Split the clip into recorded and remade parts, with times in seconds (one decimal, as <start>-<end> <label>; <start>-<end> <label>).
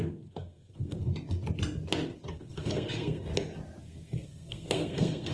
0.0-1.1 remade; 1.1-2.3 recorded; 2.3-3.3 remade; 3.3-3.8 recorded; 3.8-5.3 remade